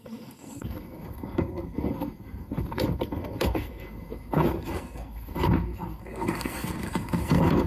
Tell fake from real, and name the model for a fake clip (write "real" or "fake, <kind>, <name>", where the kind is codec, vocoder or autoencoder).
fake, codec, SNAC